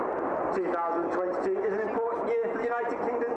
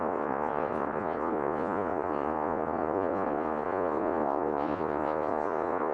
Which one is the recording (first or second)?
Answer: first